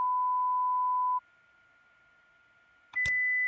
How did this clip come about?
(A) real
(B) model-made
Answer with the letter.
A